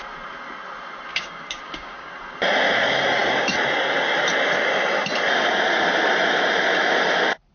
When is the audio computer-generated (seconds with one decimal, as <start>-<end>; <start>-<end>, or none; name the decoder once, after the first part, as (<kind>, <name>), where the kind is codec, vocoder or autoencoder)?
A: 1.1-2.1 (codec, DAC)